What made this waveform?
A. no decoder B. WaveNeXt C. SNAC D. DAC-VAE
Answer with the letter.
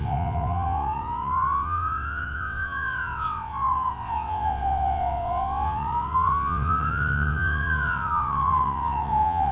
B